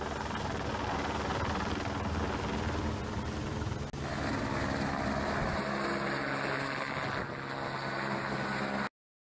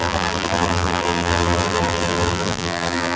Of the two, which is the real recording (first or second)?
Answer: first